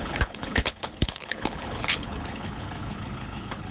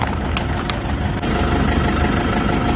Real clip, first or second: second